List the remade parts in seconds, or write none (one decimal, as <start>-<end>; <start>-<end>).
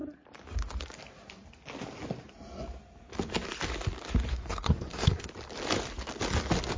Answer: 4.3-5.3